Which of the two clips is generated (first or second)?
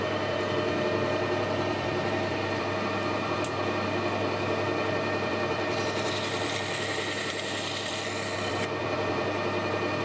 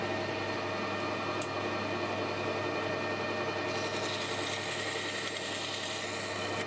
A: first